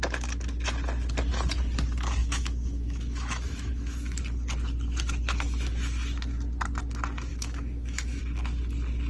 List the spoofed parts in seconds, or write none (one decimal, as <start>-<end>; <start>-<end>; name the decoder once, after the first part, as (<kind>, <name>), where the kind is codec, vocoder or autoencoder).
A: 2.2-4.2 (autoencoder, DAC-VAE); 7.3-8.2